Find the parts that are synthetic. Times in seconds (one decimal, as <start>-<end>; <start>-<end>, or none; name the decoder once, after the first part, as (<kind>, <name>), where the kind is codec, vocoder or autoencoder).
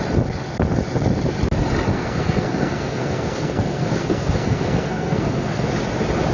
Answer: 1.9-5.7 (codec, SNAC)